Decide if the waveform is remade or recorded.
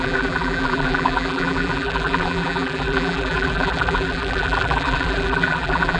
remade